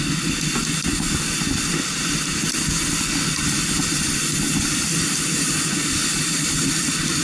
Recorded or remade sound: recorded